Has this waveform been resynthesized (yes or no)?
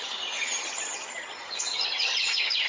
yes